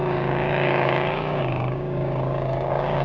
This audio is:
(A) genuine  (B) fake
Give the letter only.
B